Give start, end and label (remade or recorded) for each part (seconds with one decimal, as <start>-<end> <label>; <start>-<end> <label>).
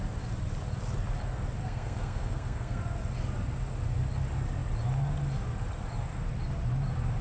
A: 0.0-1.6 recorded; 1.6-2.8 remade; 2.8-7.2 recorded